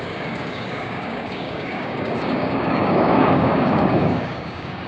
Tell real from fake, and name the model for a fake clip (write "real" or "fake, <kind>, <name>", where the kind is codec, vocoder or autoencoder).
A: fake, codec, DAC